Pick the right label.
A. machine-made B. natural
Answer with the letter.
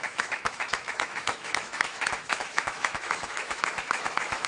A